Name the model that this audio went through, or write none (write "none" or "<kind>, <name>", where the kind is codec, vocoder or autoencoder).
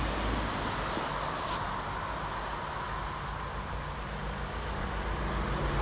none